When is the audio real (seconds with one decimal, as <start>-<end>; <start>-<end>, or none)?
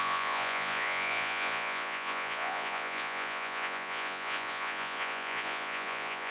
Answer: none